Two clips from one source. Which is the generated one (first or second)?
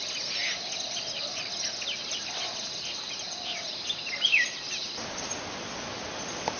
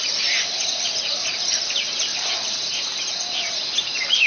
second